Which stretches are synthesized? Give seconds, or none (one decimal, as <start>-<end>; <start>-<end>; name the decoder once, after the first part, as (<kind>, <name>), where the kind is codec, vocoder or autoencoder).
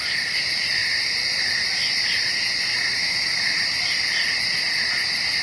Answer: 3.0-3.6 (autoencoder, DAC-VAE)